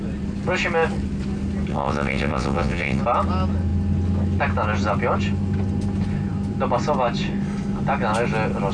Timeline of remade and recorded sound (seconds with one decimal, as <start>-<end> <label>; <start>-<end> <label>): 0.0-1.7 recorded; 1.7-3.0 remade; 3.0-8.7 recorded